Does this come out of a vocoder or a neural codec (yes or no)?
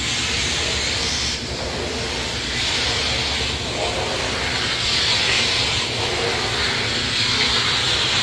no